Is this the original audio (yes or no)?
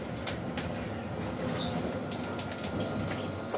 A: yes